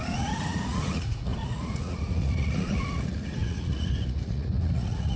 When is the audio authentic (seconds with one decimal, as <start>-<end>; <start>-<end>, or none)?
none